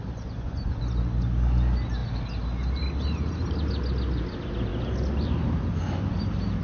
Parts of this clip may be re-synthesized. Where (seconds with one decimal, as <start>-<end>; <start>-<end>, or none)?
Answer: 0.0-0.8